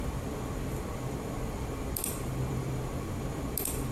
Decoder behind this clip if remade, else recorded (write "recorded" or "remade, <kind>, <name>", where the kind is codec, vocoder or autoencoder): remade, vocoder, BigVGAN v2